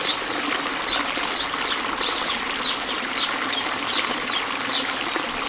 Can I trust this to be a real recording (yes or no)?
yes